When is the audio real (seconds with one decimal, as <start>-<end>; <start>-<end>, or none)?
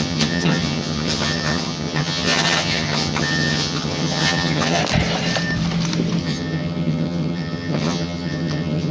4.8-6.2